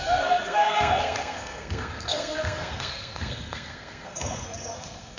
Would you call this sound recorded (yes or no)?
no